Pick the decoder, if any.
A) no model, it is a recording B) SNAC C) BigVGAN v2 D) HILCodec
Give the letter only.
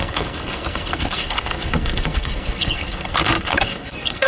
B